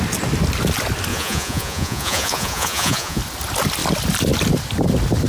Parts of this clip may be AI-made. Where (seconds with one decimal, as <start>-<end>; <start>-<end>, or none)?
1.1-3.2